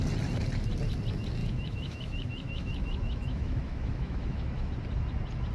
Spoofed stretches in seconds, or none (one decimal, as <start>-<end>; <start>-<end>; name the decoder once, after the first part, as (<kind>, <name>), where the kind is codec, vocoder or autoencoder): 1.4-4.7 (autoencoder, DAC-VAE)